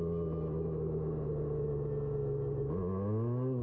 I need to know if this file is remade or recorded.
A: recorded